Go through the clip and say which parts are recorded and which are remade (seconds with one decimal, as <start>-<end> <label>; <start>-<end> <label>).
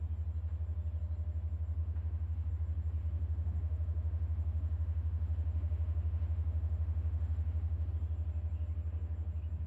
0.0-1.8 recorded; 1.8-2.5 remade; 2.5-3.0 recorded; 3.0-7.9 remade; 7.9-9.7 recorded